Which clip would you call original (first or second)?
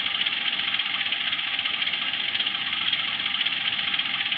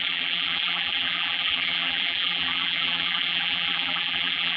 first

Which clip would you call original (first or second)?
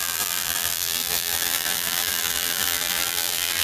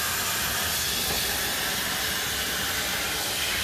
second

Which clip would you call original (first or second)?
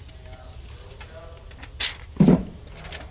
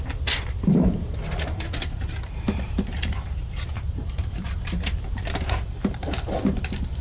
first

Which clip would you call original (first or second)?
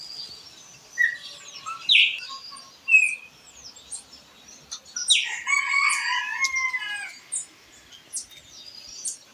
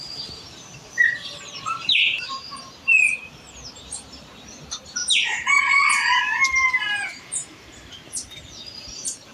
first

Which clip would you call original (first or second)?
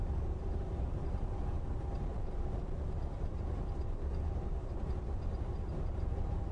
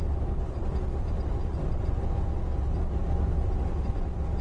second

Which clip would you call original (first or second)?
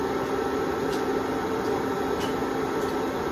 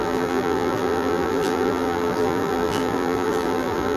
first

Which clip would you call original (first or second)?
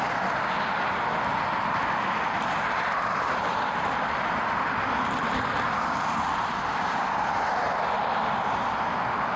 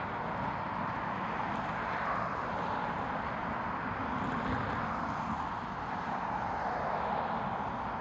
second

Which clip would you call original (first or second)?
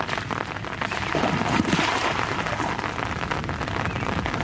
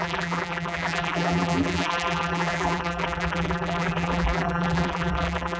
first